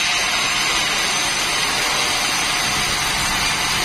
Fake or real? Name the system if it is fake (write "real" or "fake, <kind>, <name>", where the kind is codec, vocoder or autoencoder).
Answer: real